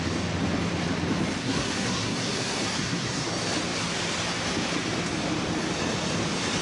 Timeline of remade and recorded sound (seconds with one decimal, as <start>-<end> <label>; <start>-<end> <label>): 0.0-1.4 recorded; 1.4-3.3 remade; 3.3-6.6 recorded